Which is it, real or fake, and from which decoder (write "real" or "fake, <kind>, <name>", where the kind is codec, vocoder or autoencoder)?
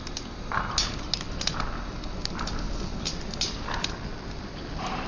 real